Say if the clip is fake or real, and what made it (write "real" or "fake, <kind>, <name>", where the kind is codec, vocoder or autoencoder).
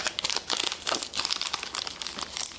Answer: real